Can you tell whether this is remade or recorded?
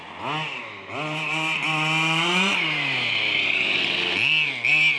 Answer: recorded